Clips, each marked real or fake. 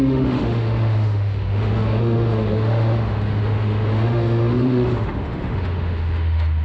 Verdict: fake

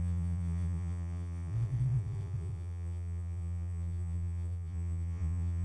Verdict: fake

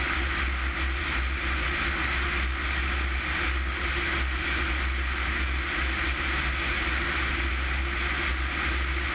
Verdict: real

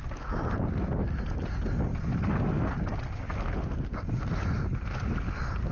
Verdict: real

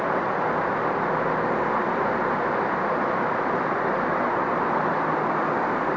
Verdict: real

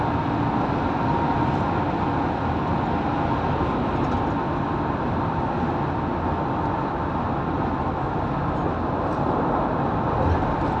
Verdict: real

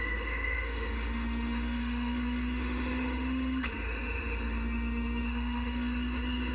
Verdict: fake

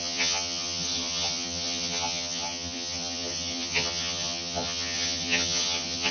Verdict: fake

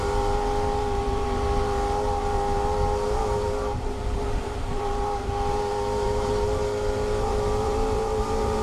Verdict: fake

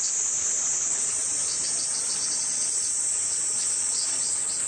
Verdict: real